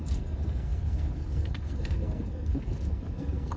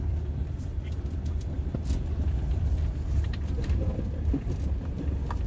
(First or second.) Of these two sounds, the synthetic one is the first